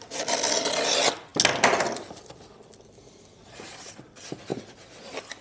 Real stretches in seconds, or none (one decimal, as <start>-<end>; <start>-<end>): 0.0-5.4

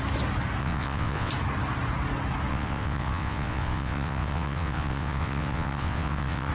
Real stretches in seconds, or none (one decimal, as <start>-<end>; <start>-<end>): 0.0-0.6; 1.3-2.5

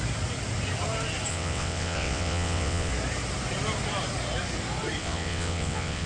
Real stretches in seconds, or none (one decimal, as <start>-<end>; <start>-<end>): 0.0-1.3; 2.9-5.0

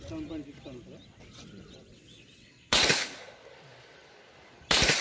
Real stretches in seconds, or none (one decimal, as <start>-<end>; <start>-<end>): 0.0-1.1; 2.8-5.0

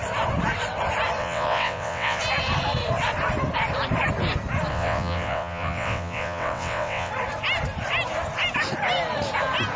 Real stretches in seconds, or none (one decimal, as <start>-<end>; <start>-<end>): 0.0-1.2; 2.2-4.7; 7.1-9.8

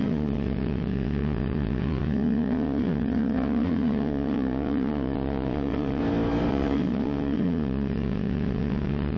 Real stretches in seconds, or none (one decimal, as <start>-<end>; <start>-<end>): 6.0-6.5